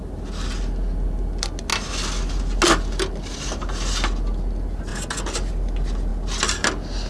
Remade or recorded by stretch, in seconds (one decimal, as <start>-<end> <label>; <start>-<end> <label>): 0.0-7.1 recorded